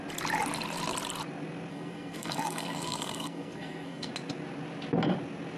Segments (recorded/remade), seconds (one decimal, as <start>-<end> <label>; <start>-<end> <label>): 0.0-1.7 recorded; 1.7-4.1 remade; 4.1-5.6 recorded

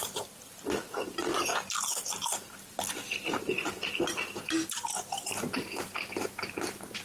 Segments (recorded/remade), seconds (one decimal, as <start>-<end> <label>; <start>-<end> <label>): 0.0-7.0 remade

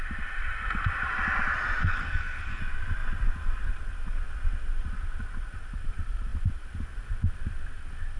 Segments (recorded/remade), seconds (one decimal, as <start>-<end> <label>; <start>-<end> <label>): 0.0-1.8 recorded; 1.8-2.6 remade; 2.6-8.2 recorded

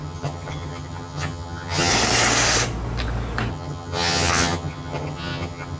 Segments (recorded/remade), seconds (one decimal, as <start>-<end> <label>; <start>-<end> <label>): 0.0-1.9 remade; 1.9-3.5 recorded; 3.5-5.8 remade

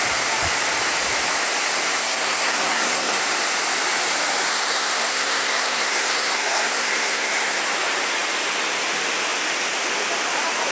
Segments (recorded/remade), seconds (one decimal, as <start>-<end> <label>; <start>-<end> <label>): 0.0-2.0 recorded; 2.0-3.2 remade; 3.2-4.5 recorded; 4.5-7.6 remade; 7.6-10.7 recorded